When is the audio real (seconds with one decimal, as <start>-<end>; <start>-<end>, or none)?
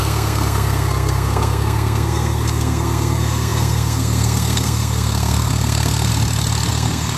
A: 6.1-6.7